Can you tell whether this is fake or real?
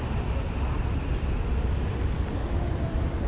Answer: real